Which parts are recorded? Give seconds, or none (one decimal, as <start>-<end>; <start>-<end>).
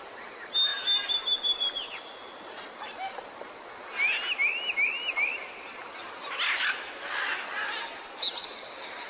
0.0-9.1